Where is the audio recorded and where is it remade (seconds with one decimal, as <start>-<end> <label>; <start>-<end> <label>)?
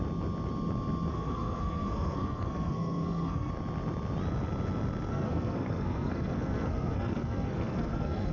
0.0-1.1 recorded; 1.1-3.5 remade; 3.5-5.1 recorded; 5.1-8.3 remade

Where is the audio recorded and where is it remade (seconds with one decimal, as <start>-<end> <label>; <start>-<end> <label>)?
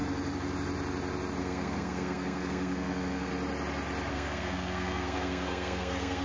0.0-1.4 recorded; 1.4-3.3 remade; 3.3-4.1 recorded; 4.1-6.2 remade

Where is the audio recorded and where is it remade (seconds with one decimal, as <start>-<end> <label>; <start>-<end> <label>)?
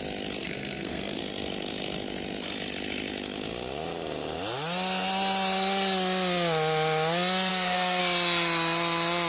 0.0-0.4 recorded; 0.4-1.2 remade; 1.2-7.5 recorded; 7.5-8.0 remade; 8.0-9.3 recorded